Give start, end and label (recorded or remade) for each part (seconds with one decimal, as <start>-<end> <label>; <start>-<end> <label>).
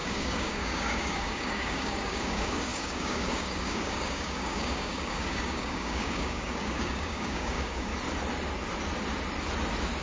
0.0-7.9 remade; 7.9-10.0 recorded